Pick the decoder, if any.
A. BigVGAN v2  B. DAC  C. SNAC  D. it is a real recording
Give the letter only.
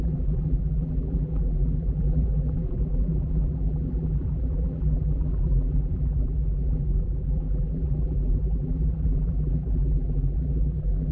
A